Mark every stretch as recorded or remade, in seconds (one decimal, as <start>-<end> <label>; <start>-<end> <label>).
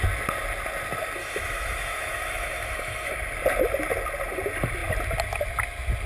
0.0-1.2 recorded; 1.2-3.1 remade; 3.1-6.1 recorded